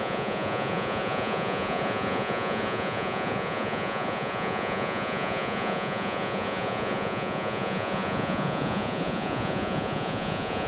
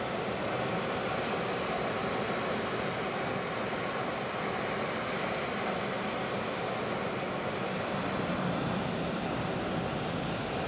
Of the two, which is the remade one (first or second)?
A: first